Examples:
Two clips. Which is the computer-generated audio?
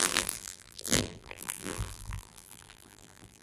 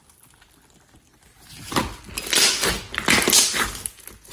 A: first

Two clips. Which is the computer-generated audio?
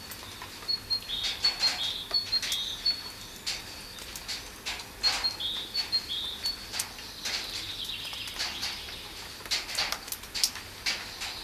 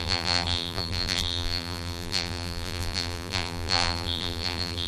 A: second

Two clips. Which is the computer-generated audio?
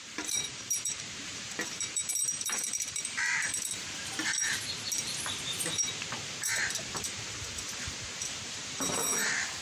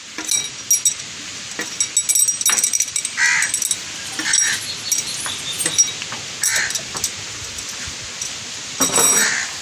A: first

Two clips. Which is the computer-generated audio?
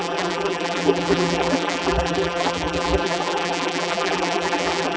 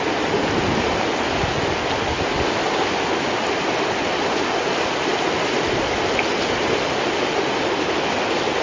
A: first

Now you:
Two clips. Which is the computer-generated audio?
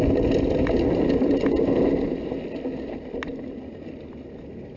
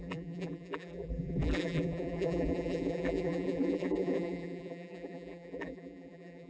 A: second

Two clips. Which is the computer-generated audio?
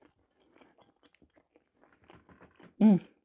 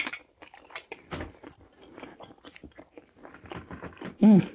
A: second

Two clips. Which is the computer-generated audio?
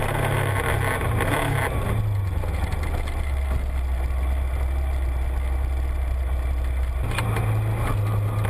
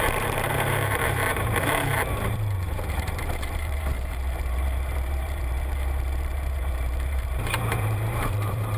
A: second